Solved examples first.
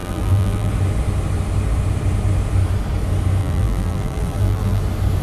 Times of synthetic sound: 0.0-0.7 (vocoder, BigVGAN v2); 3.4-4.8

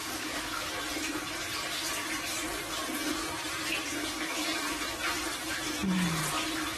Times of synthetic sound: 0.0-0.7 (codec, DAC); 4.0-4.7

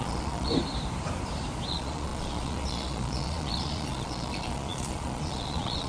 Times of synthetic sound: 0.0-0.5 (vocoder, Vocos); 1.7-5.9